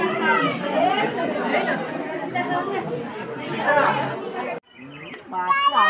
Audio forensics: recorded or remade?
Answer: recorded